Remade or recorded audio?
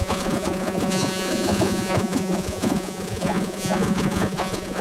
remade